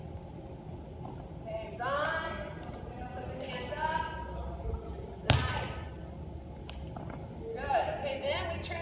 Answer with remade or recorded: recorded